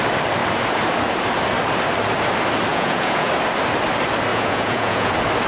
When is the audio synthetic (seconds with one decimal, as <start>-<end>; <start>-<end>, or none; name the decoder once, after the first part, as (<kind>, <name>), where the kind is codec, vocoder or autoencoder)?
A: 2.7-3.3 (vocoder, Vocos); 4.3-5.1